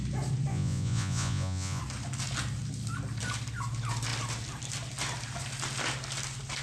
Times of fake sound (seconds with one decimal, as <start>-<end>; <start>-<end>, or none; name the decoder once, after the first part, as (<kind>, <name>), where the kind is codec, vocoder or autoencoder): 0.5-1.8 (vocoder, Vocos)